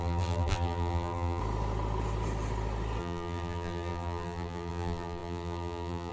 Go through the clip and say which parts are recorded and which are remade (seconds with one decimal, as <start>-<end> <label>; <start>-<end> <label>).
0.0-1.4 remade; 1.4-3.0 recorded; 3.0-6.1 remade